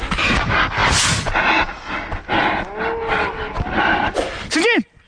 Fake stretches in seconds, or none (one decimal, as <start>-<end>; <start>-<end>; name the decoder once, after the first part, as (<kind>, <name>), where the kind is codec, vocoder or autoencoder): none